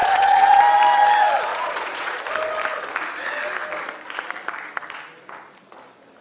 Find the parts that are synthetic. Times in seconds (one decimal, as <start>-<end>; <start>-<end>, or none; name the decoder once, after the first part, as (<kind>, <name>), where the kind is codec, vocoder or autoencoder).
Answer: 0.0-0.6 (vocoder, Vocos); 1.5-2.2